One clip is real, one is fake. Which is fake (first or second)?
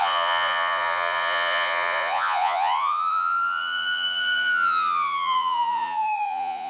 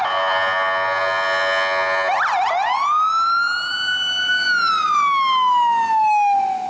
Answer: first